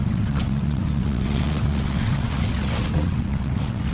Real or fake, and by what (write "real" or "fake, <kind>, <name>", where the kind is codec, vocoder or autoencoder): fake, vocoder, WaveNeXt